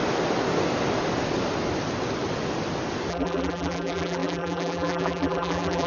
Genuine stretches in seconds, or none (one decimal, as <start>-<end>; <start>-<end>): 0.0-3.1